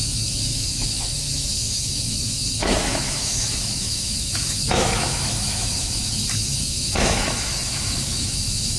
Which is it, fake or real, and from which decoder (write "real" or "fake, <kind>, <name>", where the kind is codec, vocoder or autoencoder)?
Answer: fake, autoencoder, DAC-VAE